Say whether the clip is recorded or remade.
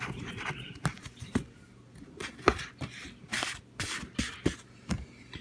recorded